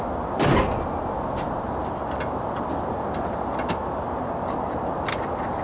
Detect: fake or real real